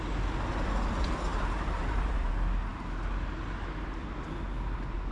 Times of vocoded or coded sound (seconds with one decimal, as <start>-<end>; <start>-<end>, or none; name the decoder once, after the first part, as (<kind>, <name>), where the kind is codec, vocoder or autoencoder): 1.3-2.3 (vocoder, BigVGAN v2)